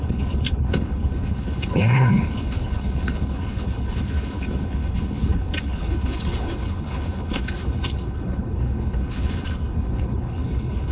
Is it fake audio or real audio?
fake